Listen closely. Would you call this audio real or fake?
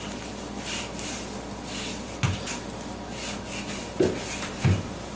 real